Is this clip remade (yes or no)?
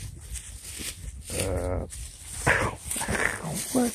no